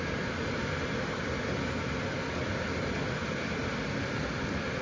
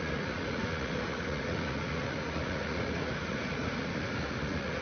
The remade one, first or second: second